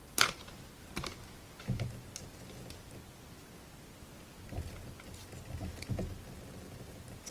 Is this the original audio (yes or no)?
yes